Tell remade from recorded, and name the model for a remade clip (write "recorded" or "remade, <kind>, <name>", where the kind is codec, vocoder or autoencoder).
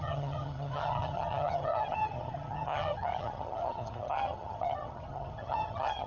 remade, vocoder, HiFi-GAN